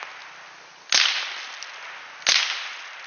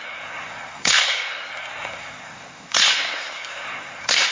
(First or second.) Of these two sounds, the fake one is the second